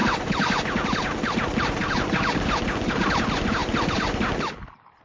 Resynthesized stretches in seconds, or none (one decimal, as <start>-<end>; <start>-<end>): none